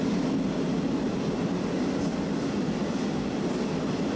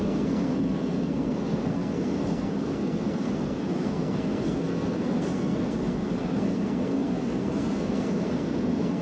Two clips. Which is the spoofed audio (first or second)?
second